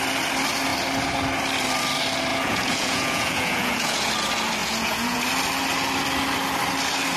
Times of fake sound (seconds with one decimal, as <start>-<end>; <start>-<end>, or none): 2.3-4.1; 4.6-5.2